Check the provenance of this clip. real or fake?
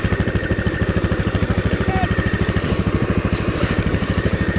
fake